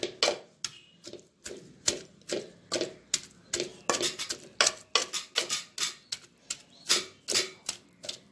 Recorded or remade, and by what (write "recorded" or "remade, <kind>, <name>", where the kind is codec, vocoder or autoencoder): recorded